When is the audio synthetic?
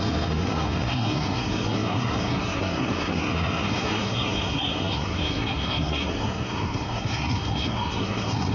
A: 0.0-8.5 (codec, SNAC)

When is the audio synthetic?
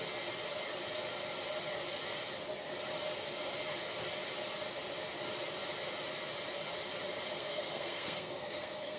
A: 7.3-9.0 (codec, SNAC)